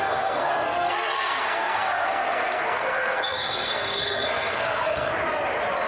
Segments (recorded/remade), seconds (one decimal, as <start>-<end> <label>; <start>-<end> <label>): 0.0-5.1 remade; 5.1-5.9 recorded